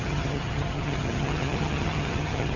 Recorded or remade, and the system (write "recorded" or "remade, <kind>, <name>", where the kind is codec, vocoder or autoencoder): remade, vocoder, HiFi-GAN